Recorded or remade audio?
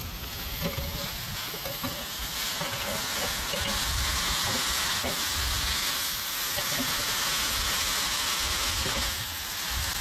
recorded